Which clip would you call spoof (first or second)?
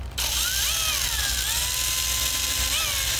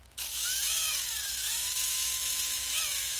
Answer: second